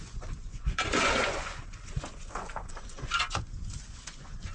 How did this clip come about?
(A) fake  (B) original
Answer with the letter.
A